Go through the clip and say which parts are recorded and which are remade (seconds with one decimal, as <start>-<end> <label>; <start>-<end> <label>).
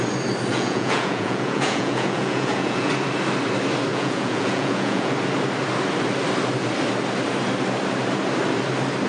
0.0-0.5 recorded; 0.5-2.9 remade; 2.9-3.9 recorded; 3.9-5.1 remade; 5.1-9.1 recorded